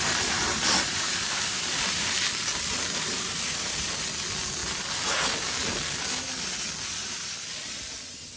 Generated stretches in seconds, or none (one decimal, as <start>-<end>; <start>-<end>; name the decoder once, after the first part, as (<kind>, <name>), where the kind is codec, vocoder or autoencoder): 0.9-3.9 (vocoder, BigVGAN v2)

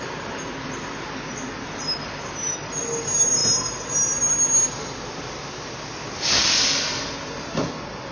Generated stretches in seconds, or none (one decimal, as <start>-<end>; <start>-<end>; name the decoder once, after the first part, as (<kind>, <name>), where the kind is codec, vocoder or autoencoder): none

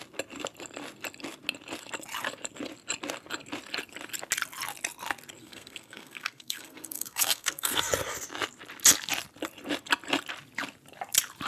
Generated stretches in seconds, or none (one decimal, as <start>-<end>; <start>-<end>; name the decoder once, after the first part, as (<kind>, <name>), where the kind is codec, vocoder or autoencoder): 5.4-7.9 (codec, SNAC)

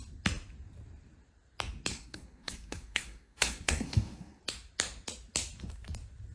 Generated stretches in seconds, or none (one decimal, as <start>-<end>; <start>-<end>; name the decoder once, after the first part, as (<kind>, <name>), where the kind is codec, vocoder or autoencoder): 1.9-4.4 (codec, SNAC)

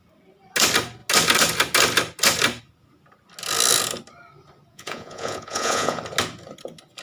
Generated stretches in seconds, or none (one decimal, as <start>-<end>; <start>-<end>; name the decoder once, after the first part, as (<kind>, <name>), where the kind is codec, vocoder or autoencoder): 4.7-6.0 (vocoder, Vocos)

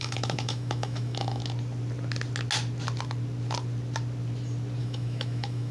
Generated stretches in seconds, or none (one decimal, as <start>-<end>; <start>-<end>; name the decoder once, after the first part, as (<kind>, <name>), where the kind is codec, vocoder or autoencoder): 0.0-1.4 (autoencoder, DAC-VAE); 4.8-5.7